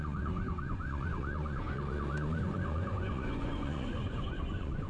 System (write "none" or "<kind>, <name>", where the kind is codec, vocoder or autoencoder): vocoder, Vocos